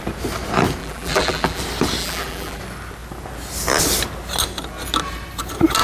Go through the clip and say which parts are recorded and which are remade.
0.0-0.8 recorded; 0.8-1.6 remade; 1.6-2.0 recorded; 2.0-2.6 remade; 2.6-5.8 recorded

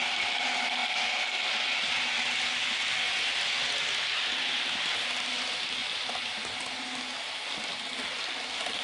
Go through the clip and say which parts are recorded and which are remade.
0.0-8.8 recorded

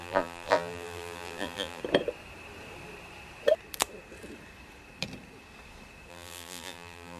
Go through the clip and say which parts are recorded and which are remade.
0.0-1.8 remade; 1.8-6.1 recorded; 6.1-7.2 remade

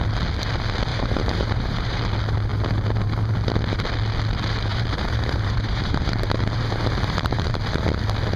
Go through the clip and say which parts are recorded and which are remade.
0.0-0.9 recorded; 0.9-2.0 remade; 2.0-4.7 recorded; 4.7-7.6 remade; 7.6-8.4 recorded

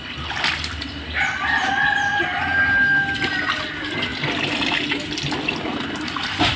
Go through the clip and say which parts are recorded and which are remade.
0.0-1.7 recorded; 1.7-2.2 remade; 2.2-4.1 recorded; 4.1-5.1 remade; 5.1-6.6 recorded

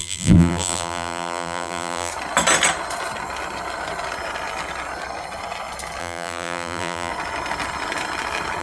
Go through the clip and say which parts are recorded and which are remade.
0.0-2.1 remade; 2.1-6.0 recorded; 6.0-7.1 remade; 7.1-8.6 recorded

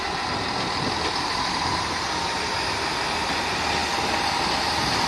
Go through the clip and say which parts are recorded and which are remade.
0.0-1.7 recorded; 1.7-3.0 remade; 3.0-5.1 recorded